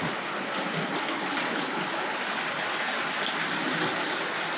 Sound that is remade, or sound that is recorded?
recorded